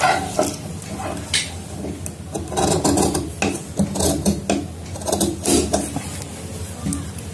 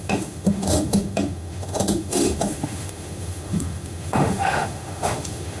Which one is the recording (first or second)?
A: first